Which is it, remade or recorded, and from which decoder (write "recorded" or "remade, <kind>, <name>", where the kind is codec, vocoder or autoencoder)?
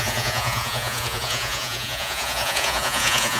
remade, vocoder, Vocos